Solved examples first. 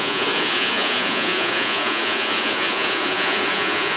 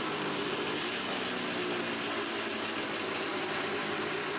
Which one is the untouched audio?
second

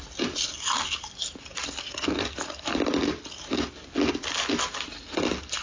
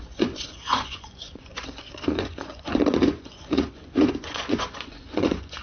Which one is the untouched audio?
first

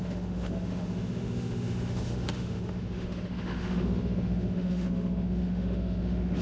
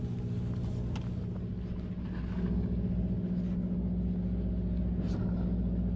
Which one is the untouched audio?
second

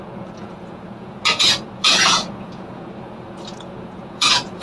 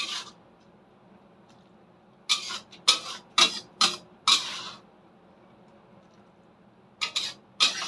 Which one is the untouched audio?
second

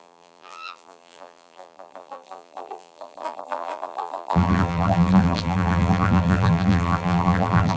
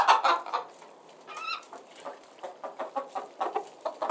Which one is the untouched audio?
second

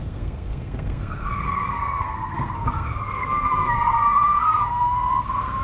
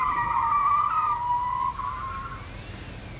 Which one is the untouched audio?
second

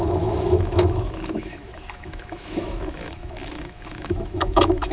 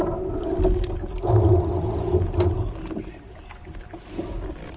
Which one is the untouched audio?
second